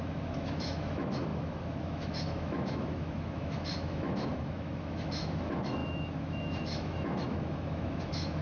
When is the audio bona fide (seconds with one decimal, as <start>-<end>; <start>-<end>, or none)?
none